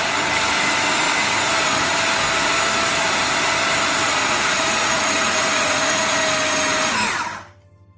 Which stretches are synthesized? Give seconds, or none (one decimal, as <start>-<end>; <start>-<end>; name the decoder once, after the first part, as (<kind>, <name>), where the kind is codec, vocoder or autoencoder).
4.0-6.2 (vocoder, Vocos)